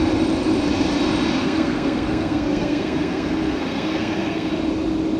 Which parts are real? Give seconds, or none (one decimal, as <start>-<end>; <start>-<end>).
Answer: 0.0-1.4; 4.5-5.2